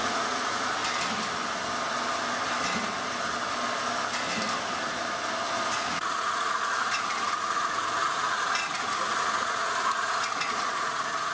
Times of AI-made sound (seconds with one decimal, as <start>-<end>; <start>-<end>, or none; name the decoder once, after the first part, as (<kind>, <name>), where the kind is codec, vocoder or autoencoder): 0.0-0.8 (vocoder, Vocos); 5.7-11.3